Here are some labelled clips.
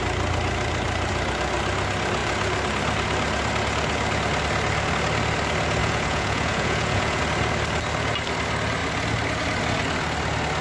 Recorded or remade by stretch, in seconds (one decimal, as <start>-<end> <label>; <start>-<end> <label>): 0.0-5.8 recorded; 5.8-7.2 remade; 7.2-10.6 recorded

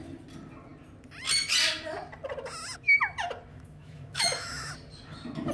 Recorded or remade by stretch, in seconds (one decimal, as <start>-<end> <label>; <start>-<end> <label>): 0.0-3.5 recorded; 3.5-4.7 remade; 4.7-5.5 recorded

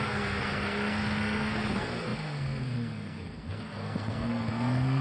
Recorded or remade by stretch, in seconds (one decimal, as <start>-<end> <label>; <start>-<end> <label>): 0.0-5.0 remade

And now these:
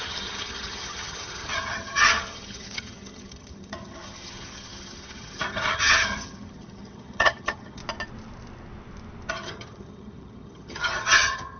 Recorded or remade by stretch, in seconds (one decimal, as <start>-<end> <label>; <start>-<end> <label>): 0.0-7.8 remade; 7.8-9.3 recorded; 9.3-11.6 remade

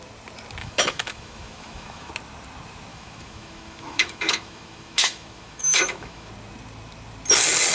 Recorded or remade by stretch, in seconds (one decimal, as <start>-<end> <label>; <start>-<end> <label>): 0.0-0.6 recorded; 0.6-2.1 remade; 2.1-2.9 recorded; 2.9-6.3 remade; 6.3-7.7 recorded

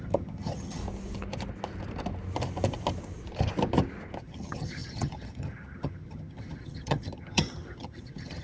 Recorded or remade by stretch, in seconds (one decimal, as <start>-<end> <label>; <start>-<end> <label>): 0.0-0.8 remade; 0.8-4.2 recorded; 4.2-8.4 remade

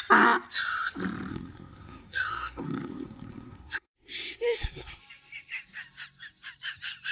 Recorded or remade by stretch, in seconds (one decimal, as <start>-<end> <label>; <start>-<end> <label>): 0.0-1.3 recorded; 1.3-5.0 remade; 5.0-7.1 recorded